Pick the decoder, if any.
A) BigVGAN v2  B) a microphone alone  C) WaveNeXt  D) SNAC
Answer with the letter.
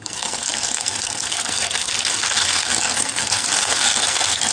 D